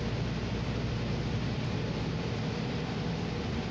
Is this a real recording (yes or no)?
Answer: yes